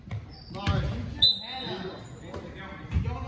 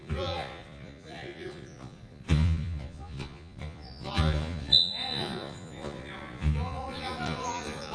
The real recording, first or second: first